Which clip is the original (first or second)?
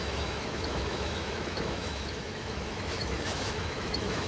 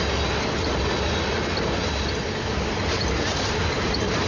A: second